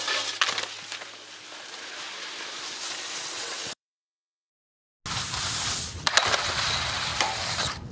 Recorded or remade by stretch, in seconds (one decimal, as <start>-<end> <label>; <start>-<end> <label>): 0.0-3.2 recorded; 3.2-4.5 remade; 4.5-7.9 recorded